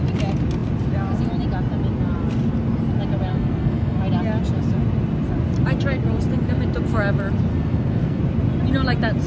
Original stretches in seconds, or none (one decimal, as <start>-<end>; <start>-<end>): 0.0-3.3; 4.0-7.5; 8.2-9.3